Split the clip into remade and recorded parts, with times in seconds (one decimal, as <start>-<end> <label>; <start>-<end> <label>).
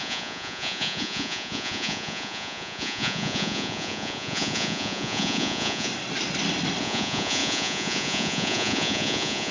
0.0-5.9 remade; 5.9-6.8 recorded; 6.8-9.5 remade